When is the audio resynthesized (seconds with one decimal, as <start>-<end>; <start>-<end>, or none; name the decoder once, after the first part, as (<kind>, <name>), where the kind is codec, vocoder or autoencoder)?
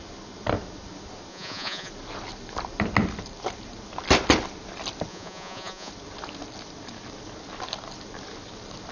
1.3-1.9 (vocoder, Vocos); 5.1-5.9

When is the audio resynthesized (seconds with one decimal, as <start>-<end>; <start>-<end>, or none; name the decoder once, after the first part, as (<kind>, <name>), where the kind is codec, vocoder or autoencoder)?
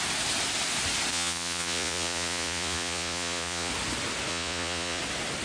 1.1-3.7 (vocoder, Vocos); 4.3-5.0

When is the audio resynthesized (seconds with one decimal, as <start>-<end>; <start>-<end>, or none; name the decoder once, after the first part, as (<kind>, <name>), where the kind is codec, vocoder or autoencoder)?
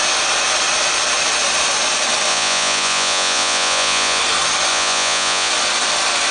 2.3-4.2 (vocoder, Vocos); 4.7-5.5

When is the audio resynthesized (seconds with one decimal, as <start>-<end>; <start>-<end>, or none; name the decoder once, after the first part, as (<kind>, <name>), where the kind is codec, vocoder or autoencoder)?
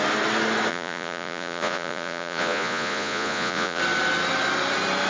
0.7-3.8 (vocoder, Vocos)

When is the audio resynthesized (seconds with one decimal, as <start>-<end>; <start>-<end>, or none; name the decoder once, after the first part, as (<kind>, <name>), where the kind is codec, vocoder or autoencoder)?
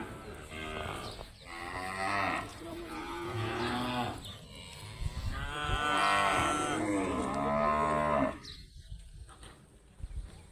2.5-3.6 (vocoder, Vocos)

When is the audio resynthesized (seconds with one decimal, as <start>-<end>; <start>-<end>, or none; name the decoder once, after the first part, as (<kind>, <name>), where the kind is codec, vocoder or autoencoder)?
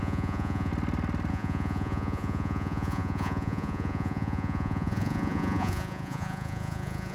0.0-0.7 (vocoder, Vocos); 1.3-7.1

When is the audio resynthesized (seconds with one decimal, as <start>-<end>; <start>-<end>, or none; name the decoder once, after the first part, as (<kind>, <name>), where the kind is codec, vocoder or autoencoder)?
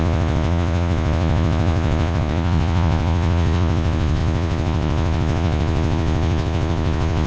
0.0-7.3 (vocoder, Vocos)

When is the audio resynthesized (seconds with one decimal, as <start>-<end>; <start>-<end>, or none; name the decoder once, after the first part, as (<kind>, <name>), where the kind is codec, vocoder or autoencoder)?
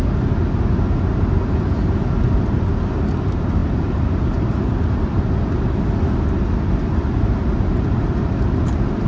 none